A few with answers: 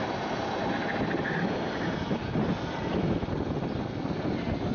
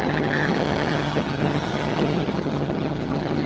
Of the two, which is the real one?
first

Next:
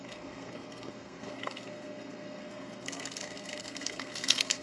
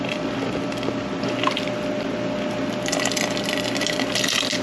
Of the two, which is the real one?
second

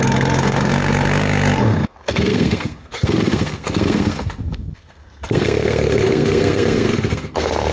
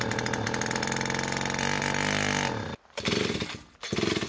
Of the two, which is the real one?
second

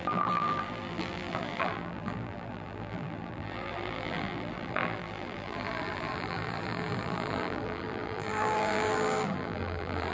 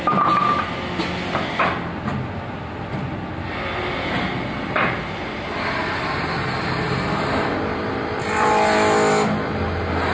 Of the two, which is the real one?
second